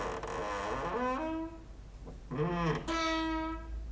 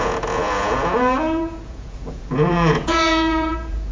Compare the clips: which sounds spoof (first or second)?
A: second